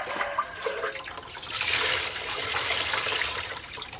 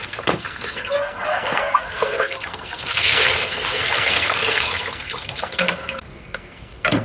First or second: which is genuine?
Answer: first